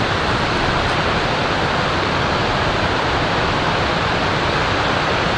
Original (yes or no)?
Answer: yes